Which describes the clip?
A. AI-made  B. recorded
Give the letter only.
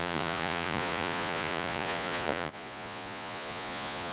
A